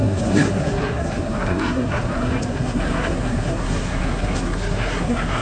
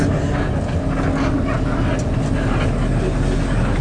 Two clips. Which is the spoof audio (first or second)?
first